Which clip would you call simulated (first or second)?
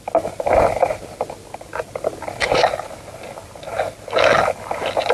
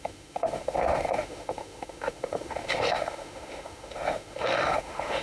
second